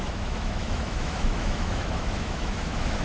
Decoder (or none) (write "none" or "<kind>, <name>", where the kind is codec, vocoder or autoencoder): autoencoder, DAC-VAE